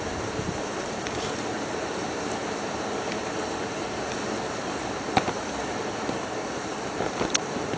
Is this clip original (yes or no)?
no